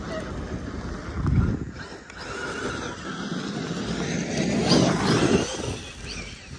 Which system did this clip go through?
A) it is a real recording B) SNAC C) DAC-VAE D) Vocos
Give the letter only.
A